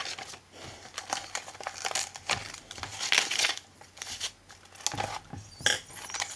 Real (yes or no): yes